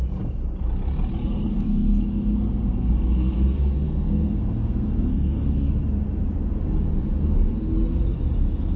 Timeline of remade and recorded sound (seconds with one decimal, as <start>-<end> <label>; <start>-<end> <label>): 0.0-1.2 recorded; 1.2-5.7 remade; 5.7-8.8 recorded